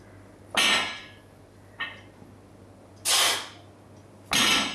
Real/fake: real